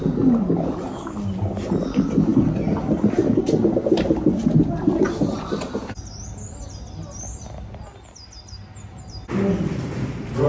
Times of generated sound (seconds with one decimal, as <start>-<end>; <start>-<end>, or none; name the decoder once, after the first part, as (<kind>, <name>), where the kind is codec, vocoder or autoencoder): none